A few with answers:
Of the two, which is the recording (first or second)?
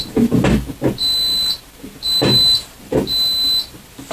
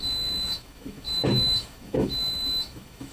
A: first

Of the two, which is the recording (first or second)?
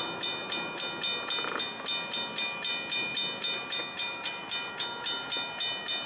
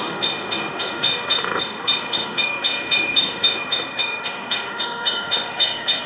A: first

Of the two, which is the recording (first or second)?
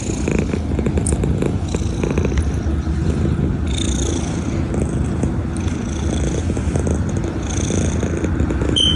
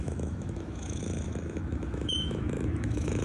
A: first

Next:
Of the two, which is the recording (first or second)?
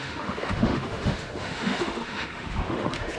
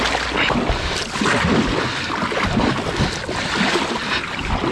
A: second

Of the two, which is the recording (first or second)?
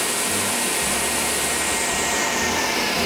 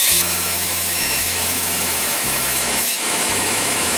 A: first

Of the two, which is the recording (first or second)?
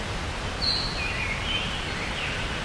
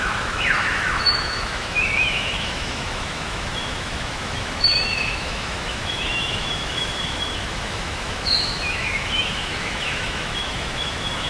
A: first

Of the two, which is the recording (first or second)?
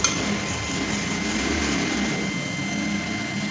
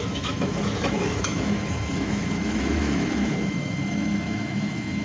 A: first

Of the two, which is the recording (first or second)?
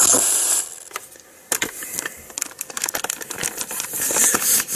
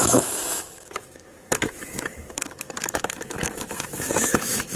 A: first